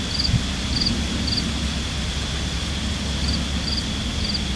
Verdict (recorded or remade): recorded